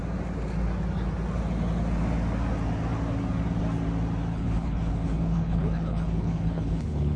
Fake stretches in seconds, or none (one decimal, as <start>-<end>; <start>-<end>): 4.3-7.2